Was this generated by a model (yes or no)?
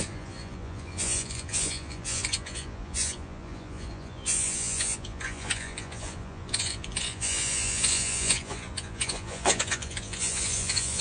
yes